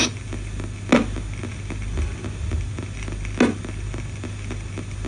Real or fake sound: real